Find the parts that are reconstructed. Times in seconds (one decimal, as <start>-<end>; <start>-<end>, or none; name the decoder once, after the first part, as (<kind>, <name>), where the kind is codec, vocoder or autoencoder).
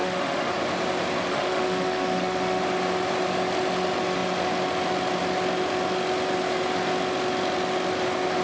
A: 0.0-0.5 (autoencoder, DAC-VAE); 1.3-2.6